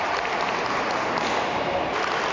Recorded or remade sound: recorded